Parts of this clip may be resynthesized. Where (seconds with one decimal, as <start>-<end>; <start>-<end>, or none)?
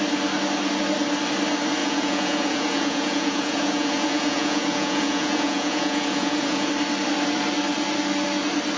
1.8-6.7